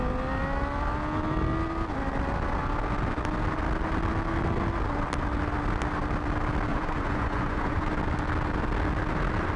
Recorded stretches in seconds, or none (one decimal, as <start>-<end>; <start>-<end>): 0.0-6.7; 7.9-9.6